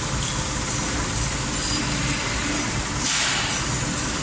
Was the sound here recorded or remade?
recorded